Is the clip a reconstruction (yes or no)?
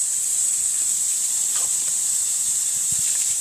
yes